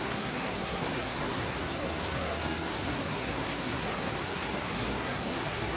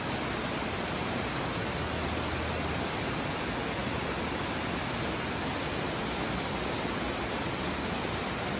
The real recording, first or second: second